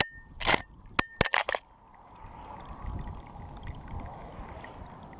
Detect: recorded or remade recorded